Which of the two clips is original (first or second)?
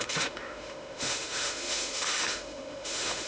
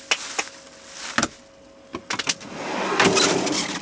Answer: second